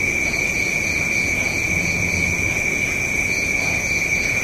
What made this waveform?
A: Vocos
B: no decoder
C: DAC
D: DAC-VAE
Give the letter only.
A